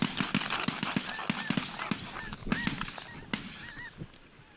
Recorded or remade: recorded